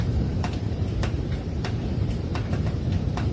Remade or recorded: remade